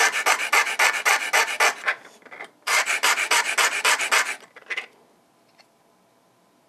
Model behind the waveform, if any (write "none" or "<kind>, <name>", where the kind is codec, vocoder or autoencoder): none